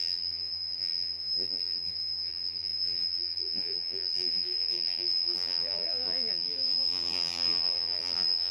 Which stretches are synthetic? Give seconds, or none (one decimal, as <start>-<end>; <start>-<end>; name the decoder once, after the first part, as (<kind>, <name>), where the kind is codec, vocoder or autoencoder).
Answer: 0.0-8.5 (vocoder, BigVGAN v2)